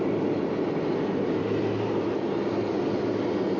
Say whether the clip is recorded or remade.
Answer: recorded